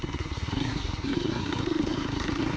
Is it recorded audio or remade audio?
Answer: remade